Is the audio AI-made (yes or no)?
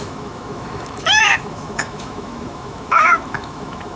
yes